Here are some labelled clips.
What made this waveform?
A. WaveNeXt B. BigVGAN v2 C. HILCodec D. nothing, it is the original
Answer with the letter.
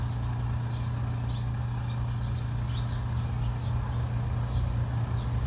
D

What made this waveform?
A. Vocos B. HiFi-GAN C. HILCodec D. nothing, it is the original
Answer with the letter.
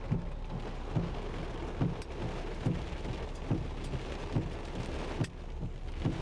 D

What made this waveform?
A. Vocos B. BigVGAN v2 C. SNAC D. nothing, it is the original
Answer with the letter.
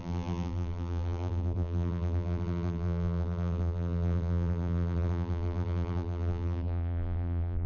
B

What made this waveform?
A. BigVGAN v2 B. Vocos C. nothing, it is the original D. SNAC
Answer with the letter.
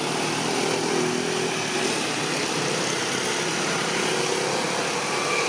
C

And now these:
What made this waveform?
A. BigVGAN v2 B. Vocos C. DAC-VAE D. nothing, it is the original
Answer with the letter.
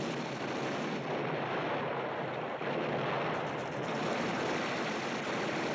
D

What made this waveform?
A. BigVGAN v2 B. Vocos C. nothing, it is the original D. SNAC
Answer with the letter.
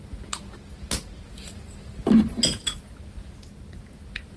C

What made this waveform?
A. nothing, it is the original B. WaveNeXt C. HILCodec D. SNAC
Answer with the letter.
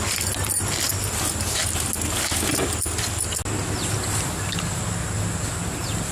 A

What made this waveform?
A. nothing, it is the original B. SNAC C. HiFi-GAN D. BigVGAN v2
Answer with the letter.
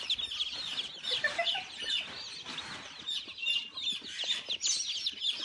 A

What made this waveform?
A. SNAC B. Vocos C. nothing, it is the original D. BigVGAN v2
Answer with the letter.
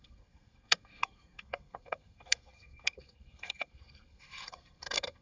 A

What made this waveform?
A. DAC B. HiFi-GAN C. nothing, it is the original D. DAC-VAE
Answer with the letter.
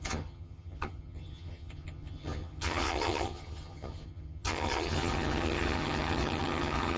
B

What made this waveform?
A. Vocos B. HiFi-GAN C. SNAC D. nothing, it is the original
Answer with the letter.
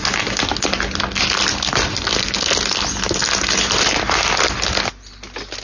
D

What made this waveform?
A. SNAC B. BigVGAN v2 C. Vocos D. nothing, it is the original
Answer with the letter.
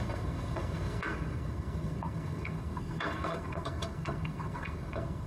A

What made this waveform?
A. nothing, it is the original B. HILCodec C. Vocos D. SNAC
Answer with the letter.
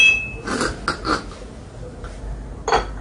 A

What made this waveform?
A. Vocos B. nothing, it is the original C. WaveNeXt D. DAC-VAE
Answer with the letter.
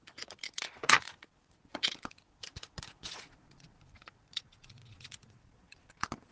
A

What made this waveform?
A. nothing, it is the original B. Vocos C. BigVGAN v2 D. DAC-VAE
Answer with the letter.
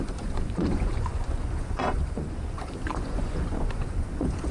B